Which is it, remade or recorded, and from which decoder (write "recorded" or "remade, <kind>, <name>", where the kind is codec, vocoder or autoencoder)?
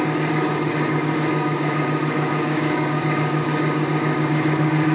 remade, codec, DAC